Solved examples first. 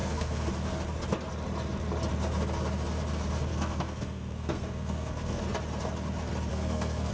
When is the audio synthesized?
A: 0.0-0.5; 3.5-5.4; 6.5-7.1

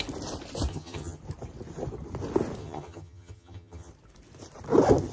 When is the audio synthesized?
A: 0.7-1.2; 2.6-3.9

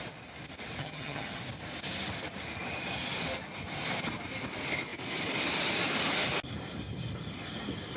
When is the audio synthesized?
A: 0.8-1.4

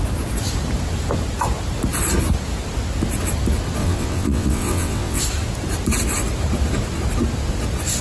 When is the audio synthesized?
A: 3.8-5.2

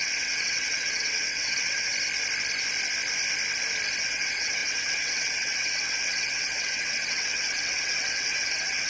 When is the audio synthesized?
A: 0.0-1.9; 4.0-8.9

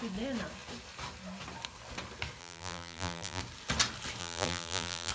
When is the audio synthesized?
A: 2.4-3.4; 4.2-5.1